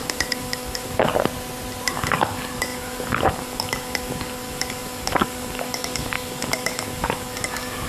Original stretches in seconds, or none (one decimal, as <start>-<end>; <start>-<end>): 1.1-1.9